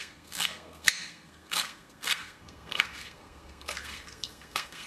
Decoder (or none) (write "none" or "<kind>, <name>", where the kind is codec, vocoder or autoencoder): codec, SNAC